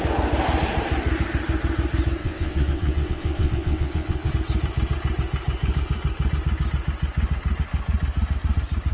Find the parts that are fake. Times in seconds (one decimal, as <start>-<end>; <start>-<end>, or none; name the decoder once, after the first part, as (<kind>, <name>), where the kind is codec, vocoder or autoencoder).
2.2-4.3 (vocoder, WaveNeXt)